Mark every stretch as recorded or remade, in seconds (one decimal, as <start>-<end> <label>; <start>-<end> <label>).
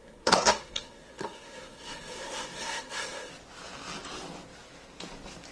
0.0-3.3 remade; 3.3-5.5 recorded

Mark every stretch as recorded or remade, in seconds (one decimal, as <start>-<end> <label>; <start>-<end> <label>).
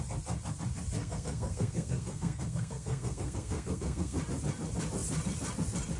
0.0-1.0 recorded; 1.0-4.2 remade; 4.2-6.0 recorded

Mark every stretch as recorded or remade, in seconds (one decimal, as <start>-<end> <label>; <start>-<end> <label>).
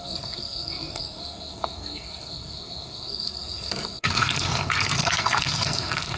0.0-6.2 remade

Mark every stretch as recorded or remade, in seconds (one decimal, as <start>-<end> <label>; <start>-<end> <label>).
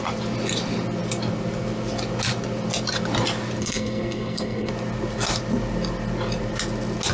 0.0-3.6 recorded; 3.6-4.7 remade; 4.7-7.1 recorded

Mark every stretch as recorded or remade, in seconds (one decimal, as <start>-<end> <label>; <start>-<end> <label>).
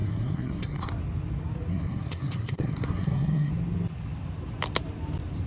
0.0-0.9 remade; 0.9-1.7 recorded; 1.7-3.5 remade; 3.5-5.5 recorded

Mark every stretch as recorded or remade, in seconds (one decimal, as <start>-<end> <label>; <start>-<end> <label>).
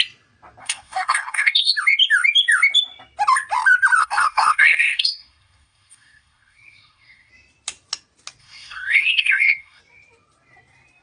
0.0-0.6 recorded; 0.6-1.7 remade; 1.7-4.0 recorded; 4.0-7.3 remade; 7.3-8.4 recorded; 8.4-9.8 remade; 9.8-11.0 recorded